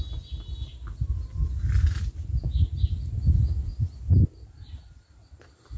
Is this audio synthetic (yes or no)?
no